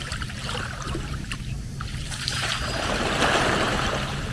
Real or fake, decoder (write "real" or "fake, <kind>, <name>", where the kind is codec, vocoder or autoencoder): fake, vocoder, BigVGAN v2